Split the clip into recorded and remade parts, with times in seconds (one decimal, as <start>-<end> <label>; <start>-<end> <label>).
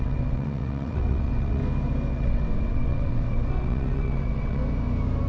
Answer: 0.0-1.6 remade; 1.6-2.1 recorded; 2.1-4.6 remade; 4.6-5.3 recorded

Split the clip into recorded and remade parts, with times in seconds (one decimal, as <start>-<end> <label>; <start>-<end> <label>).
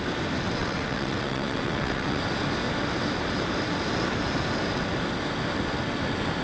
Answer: 0.0-0.6 recorded; 0.6-2.2 remade; 2.2-6.4 recorded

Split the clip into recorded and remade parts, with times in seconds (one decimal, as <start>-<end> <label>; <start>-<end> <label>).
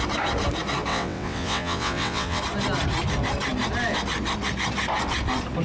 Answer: 0.0-0.9 recorded; 0.9-2.4 remade; 2.4-5.6 recorded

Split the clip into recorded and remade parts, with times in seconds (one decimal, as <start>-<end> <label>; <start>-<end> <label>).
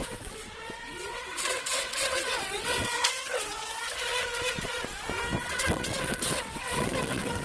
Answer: 0.0-3.7 remade; 3.7-5.4 recorded; 5.4-7.4 remade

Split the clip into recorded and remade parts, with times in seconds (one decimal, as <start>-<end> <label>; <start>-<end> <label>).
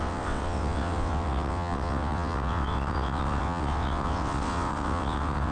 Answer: 0.0-5.5 remade